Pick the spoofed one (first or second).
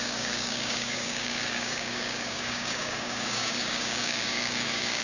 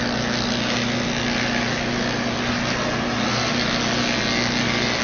first